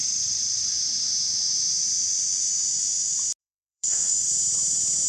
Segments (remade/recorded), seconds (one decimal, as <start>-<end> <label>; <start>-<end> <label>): 0.0-3.4 recorded; 3.4-4.3 remade; 4.3-5.1 recorded